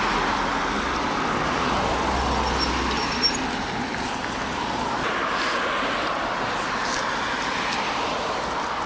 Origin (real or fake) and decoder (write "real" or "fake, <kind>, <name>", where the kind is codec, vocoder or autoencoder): real